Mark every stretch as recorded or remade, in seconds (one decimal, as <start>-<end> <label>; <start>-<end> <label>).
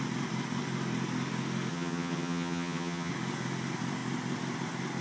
0.0-1.7 recorded; 1.7-3.1 remade; 3.1-5.0 recorded